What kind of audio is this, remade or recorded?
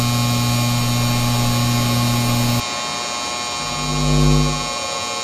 recorded